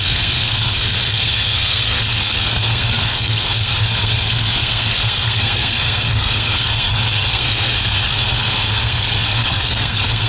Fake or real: fake